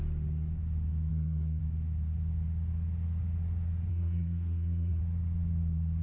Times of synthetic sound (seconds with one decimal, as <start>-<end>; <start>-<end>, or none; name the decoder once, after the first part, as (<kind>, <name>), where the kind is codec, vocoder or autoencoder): 1.1-1.6 (codec, SNAC); 3.9-5.0